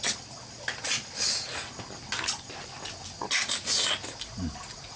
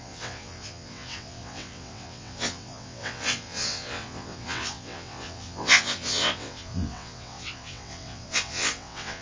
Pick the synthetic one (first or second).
second